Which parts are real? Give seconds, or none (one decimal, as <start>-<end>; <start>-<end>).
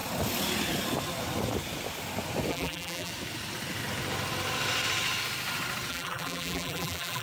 0.0-2.5; 3.1-5.9